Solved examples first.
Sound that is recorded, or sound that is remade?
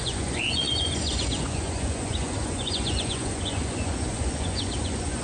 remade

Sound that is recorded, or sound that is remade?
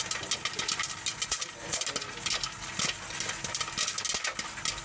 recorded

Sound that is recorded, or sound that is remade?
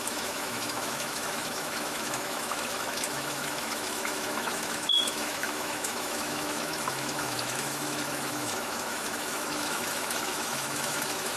remade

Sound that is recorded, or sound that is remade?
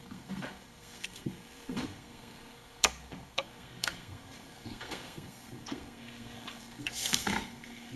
remade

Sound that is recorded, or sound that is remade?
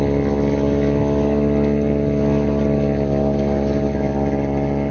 recorded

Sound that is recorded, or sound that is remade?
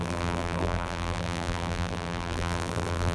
remade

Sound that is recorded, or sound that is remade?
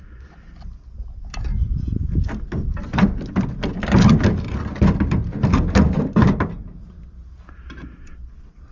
recorded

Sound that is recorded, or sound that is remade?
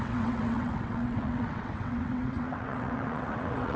remade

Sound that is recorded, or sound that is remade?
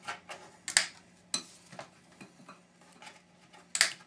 recorded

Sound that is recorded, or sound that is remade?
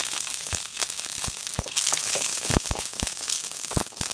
remade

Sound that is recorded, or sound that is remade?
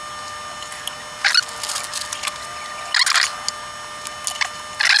recorded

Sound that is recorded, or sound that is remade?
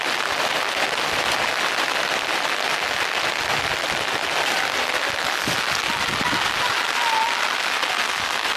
recorded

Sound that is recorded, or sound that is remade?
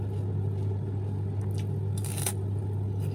recorded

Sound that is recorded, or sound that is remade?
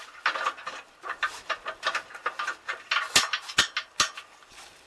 recorded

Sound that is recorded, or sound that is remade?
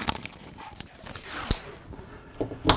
recorded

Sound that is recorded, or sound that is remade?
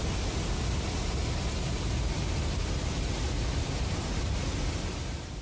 recorded